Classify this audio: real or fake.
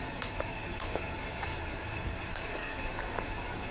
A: fake